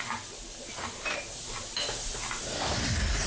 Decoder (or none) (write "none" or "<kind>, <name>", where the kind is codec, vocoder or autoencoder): none